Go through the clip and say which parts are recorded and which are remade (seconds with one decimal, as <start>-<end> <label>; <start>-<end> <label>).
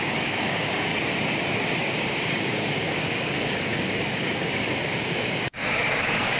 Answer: 0.0-0.9 remade; 0.9-1.8 recorded; 1.8-6.4 remade